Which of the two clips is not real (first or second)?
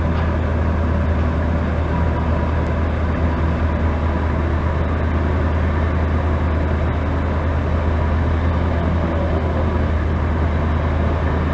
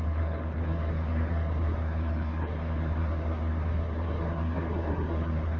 second